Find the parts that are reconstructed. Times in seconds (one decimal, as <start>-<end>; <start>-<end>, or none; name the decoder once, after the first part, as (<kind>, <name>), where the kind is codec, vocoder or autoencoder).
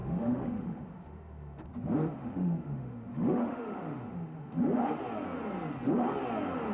0.0-1.7 (autoencoder, DAC-VAE); 2.2-5.0